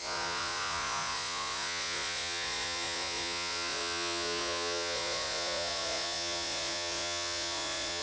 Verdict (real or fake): fake